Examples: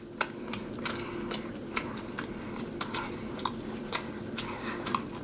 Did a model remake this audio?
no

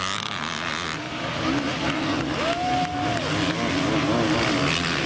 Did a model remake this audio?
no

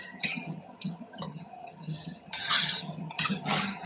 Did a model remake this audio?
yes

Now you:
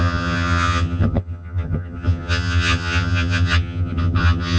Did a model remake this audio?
yes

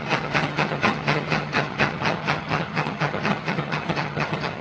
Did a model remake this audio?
yes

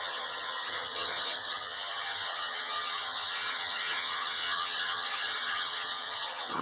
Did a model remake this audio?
yes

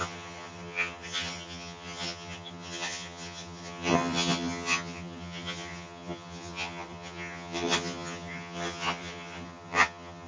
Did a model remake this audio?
yes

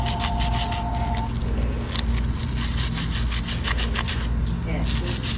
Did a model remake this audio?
no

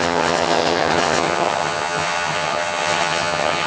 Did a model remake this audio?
yes